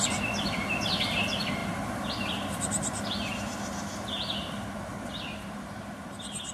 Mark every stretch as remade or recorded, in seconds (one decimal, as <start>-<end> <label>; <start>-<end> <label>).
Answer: 0.0-6.5 recorded